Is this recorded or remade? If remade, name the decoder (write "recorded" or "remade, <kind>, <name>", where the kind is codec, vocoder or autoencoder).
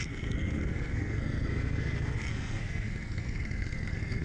remade, codec, SNAC